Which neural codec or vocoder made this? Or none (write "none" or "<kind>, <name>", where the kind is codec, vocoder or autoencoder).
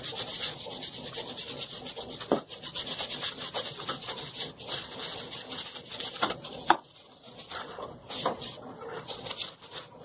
none